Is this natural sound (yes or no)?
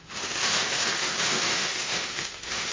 no